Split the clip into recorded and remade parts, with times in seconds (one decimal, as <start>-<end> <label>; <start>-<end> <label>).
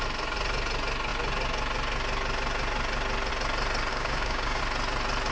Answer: 0.0-3.9 recorded; 3.9-4.6 remade; 4.6-5.3 recorded